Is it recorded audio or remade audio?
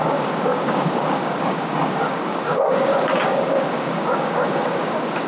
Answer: remade